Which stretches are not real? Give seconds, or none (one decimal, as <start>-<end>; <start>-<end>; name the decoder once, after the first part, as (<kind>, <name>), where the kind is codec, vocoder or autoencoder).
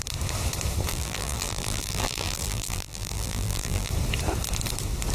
0.9-3.9 (vocoder, BigVGAN v2)